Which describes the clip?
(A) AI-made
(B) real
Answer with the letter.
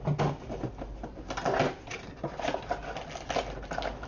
B